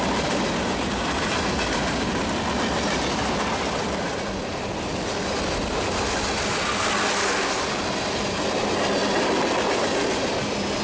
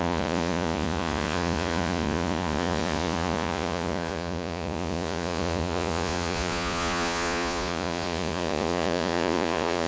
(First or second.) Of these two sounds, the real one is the first